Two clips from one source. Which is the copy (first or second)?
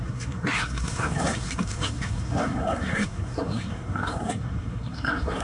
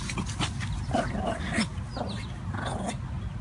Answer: first